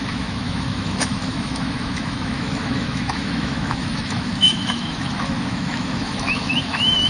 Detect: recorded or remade remade